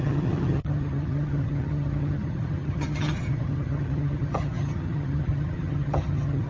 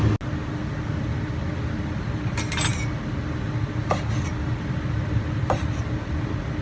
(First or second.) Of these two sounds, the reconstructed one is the first